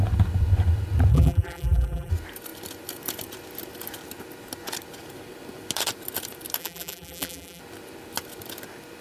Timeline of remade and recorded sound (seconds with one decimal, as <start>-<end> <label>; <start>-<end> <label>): 0.0-1.1 recorded; 1.1-2.1 remade; 2.1-6.6 recorded; 6.6-7.6 remade; 7.6-9.0 recorded